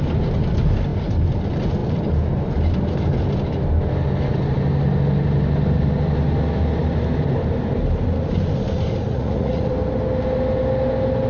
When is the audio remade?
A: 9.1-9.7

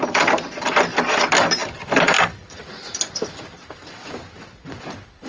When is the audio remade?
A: 0.0-5.3

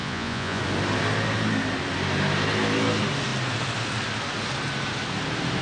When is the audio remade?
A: 0.0-0.6

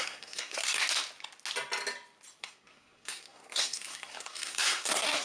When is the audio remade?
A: 0.0-0.8; 2.4-5.2

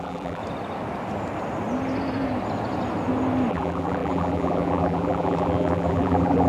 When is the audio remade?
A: 0.0-0.4; 3.5-6.5

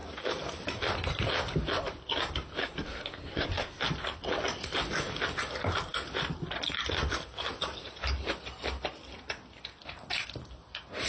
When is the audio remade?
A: 2.6-3.8

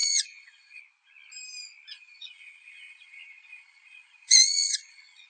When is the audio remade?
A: 0.0-0.8; 1.9-5.3

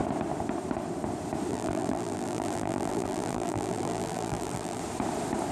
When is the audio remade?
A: 1.5-4.8